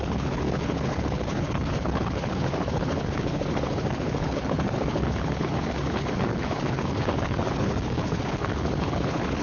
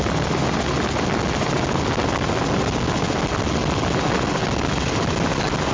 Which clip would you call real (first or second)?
second